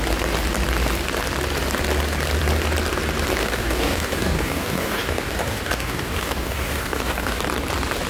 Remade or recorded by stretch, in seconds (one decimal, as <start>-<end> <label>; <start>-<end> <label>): 0.0-3.4 recorded; 3.4-7.4 remade; 7.4-8.1 recorded